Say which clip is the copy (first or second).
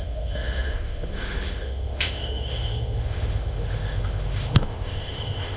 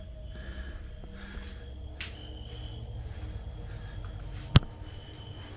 first